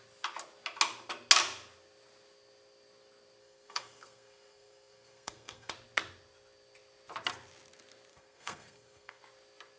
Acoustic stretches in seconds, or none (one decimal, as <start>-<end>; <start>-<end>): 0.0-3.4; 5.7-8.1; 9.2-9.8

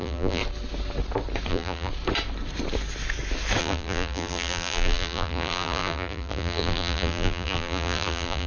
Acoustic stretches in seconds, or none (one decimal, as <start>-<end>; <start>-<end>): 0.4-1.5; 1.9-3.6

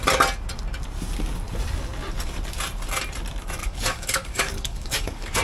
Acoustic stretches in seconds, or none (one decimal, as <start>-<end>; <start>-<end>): 0.0-3.6

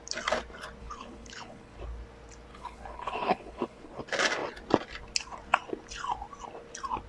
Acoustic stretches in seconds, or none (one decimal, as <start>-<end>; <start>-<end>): 0.0-0.8; 1.8-2.5; 4.0-7.1

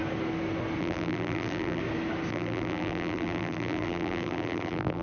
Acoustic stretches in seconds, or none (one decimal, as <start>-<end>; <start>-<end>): 0.0-0.8; 1.8-2.3

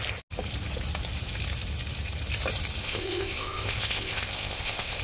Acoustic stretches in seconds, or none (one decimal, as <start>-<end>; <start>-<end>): 0.0-2.8